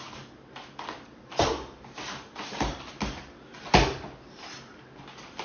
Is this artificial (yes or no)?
no